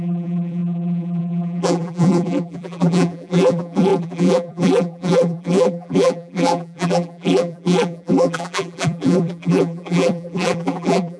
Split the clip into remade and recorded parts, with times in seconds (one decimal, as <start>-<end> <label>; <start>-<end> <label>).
0.0-11.2 remade